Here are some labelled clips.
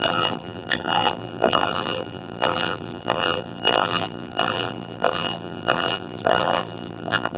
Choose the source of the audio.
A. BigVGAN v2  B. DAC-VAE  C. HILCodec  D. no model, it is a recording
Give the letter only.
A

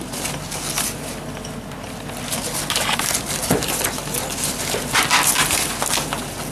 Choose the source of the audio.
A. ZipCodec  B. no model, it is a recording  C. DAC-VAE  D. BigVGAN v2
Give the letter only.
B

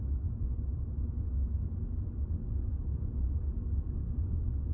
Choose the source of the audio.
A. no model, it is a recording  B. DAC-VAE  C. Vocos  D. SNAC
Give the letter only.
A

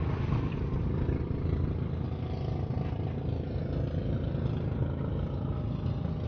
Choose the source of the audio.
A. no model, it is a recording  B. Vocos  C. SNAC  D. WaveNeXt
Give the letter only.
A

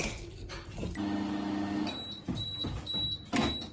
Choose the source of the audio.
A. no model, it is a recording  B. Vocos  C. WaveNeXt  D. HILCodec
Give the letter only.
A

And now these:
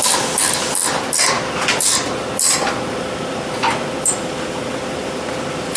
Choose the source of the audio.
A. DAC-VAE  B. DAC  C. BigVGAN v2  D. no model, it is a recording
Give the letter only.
D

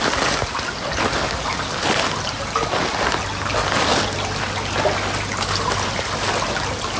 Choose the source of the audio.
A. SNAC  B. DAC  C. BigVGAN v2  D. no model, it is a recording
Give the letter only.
D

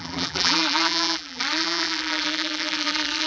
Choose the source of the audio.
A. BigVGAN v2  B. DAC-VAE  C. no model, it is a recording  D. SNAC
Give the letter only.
A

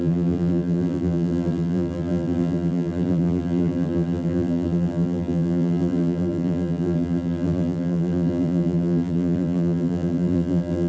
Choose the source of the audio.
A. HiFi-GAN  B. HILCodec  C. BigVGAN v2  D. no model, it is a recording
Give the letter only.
C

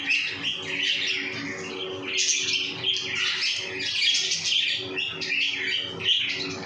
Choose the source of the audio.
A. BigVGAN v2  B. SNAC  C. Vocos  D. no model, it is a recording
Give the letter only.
D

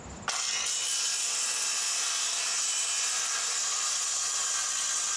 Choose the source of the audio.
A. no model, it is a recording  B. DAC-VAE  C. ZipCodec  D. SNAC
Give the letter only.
A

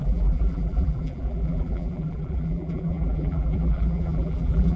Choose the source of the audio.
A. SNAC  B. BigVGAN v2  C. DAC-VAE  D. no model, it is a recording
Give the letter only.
B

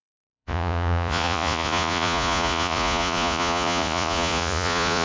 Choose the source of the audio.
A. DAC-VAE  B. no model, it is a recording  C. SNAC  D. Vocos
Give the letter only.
D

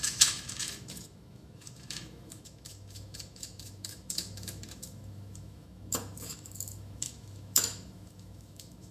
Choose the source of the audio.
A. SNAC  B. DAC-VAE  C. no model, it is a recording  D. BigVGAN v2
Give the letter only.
B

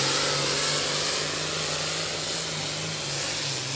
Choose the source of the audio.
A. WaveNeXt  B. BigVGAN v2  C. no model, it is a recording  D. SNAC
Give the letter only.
C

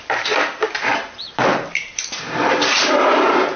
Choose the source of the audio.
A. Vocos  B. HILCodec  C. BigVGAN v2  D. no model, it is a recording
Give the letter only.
C